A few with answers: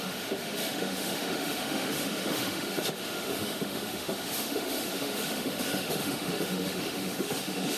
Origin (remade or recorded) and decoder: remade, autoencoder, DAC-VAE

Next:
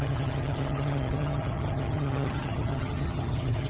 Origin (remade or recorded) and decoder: remade, vocoder, HiFi-GAN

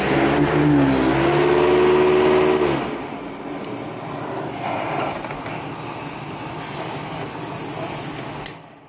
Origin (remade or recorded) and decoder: recorded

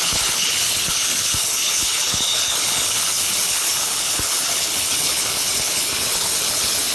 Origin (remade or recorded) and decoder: remade, codec, HILCodec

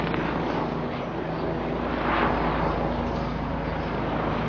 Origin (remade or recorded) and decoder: recorded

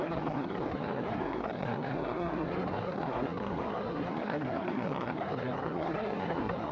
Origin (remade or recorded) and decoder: remade, codec, SNAC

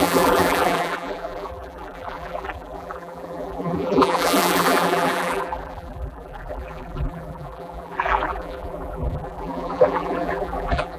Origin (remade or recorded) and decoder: remade, vocoder, BigVGAN v2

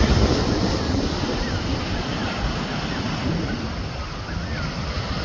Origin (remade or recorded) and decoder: recorded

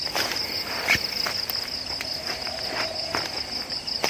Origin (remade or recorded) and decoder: recorded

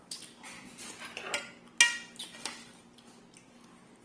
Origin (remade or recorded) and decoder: recorded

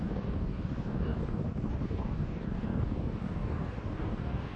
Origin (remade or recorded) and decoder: remade, codec, DAC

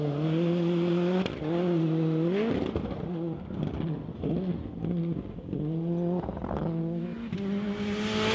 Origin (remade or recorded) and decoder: recorded